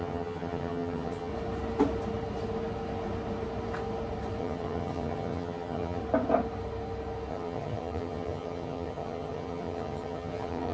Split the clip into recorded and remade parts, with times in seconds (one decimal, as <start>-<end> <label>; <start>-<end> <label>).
0.0-1.3 remade; 1.3-4.4 recorded; 4.4-6.0 remade; 6.0-7.3 recorded; 7.3-10.7 remade